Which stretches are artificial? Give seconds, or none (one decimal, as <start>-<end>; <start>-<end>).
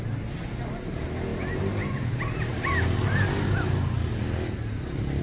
none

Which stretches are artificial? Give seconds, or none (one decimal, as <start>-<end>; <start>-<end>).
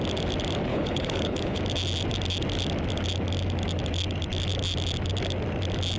0.7-1.6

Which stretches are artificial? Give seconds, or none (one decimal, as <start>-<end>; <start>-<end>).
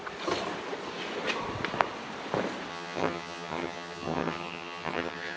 2.7-5.4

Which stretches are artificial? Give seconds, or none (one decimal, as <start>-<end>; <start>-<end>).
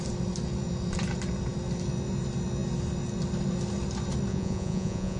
4.3-5.2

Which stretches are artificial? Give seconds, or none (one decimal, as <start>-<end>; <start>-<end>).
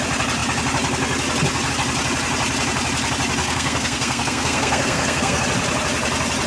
3.4-5.4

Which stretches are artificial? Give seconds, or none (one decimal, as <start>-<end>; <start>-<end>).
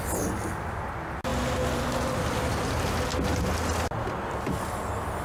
none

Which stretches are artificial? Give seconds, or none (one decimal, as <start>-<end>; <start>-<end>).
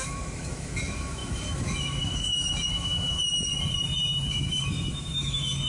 0.0-3.5; 4.3-5.7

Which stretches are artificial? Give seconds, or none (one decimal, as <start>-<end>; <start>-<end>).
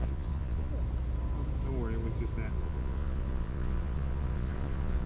0.0-0.7; 2.5-5.1